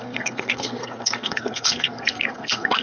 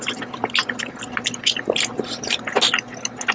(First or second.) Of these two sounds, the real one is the second